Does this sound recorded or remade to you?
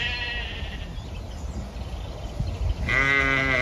recorded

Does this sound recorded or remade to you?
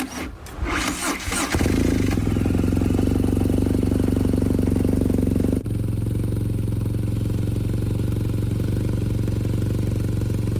recorded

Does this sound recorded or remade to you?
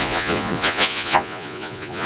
remade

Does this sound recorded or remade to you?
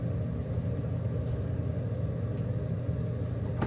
recorded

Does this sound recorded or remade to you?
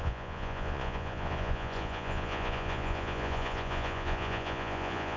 remade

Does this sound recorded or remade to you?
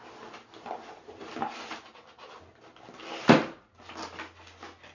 recorded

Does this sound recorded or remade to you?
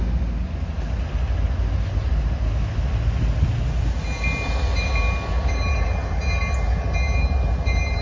recorded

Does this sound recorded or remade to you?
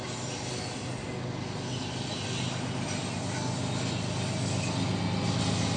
recorded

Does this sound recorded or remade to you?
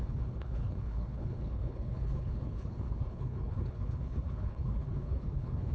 remade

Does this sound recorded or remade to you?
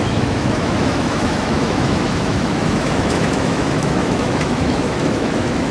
remade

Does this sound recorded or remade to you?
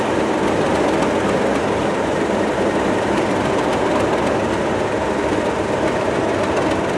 recorded